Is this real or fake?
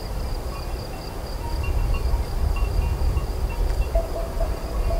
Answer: real